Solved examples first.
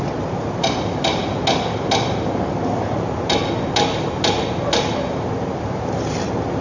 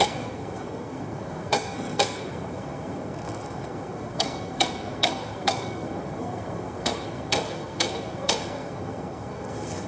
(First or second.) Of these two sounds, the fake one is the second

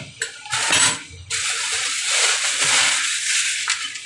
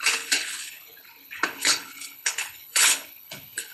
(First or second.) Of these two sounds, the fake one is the second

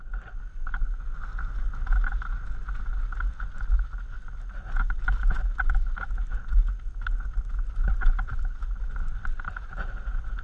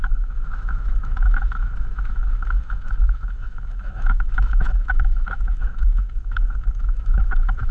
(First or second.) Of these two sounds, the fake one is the second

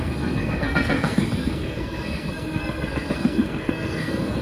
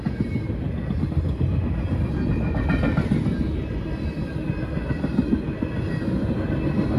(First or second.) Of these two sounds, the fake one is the first